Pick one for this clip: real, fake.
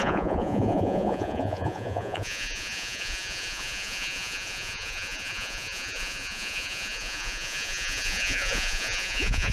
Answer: fake